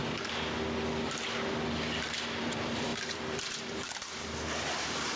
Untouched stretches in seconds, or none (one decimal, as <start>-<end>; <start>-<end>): 0.0-2.4